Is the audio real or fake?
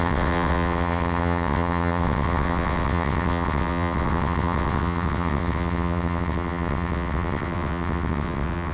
fake